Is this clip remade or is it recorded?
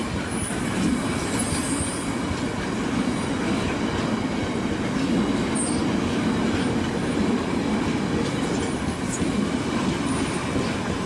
recorded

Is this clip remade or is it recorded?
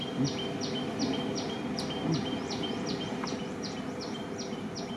remade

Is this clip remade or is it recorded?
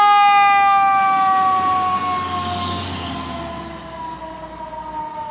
recorded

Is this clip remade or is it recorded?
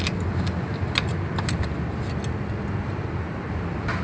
recorded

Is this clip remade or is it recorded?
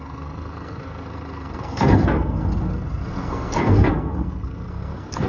remade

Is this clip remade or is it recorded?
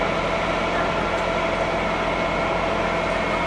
recorded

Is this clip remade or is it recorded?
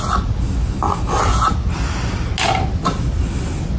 recorded